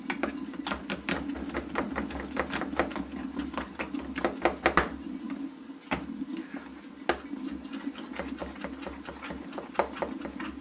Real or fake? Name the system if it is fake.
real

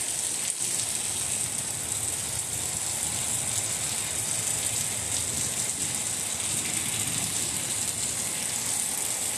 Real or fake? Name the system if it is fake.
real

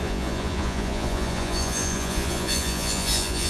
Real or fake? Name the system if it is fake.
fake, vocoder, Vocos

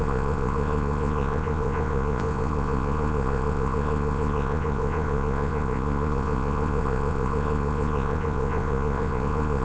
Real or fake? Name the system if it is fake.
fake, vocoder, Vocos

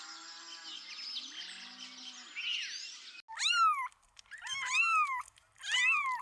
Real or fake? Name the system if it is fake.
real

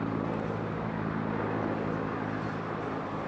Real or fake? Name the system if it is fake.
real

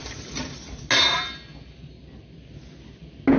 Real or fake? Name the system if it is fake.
real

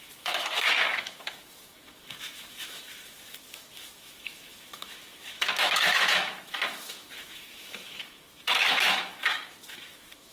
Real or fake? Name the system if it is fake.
fake, autoencoder, DAC-VAE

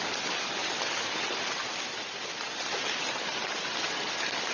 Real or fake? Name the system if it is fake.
real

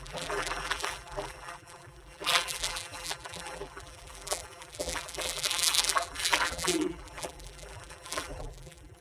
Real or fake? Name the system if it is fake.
fake, vocoder, BigVGAN v2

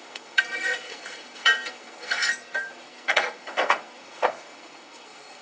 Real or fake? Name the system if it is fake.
fake, codec, SNAC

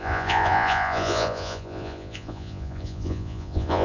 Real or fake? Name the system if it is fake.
fake, vocoder, Vocos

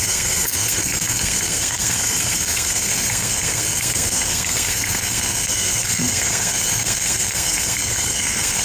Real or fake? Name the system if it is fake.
fake, codec, SNAC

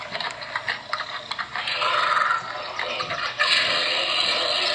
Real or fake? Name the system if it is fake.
fake, vocoder, BigVGAN v2